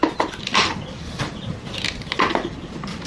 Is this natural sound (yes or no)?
yes